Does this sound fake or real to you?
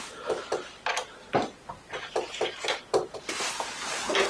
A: real